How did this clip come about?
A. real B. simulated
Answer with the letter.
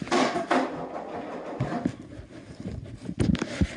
A